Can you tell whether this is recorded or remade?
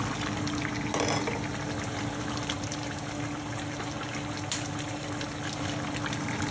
recorded